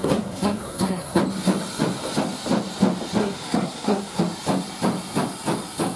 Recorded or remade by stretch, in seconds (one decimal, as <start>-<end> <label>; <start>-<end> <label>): 0.0-1.2 remade; 1.2-3.2 recorded; 3.2-4.2 remade; 4.2-6.0 recorded